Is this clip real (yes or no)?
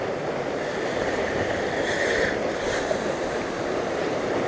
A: yes